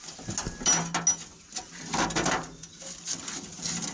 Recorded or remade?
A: recorded